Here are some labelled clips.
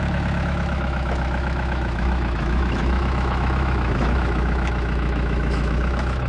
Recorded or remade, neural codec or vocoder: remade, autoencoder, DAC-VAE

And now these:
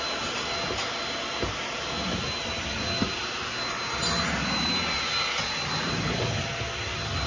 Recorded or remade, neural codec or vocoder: recorded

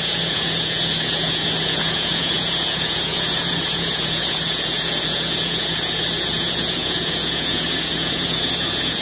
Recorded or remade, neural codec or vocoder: remade, vocoder, Vocos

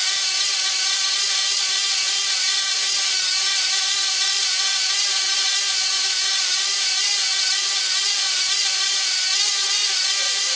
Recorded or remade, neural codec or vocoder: remade, vocoder, Vocos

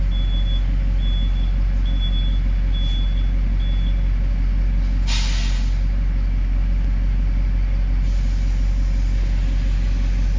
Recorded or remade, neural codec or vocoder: recorded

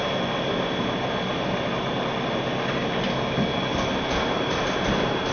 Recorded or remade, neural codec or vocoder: recorded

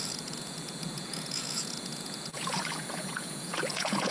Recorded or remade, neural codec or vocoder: remade, vocoder, Vocos